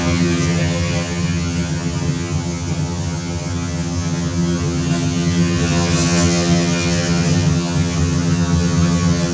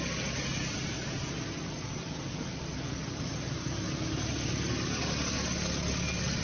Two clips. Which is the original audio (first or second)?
second